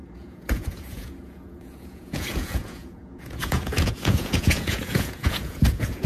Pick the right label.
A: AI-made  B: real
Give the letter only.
A